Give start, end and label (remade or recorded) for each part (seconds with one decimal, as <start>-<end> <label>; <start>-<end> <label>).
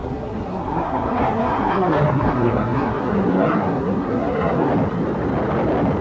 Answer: 0.0-4.7 remade; 4.7-6.0 recorded